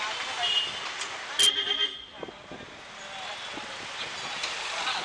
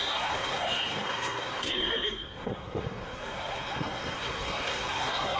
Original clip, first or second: first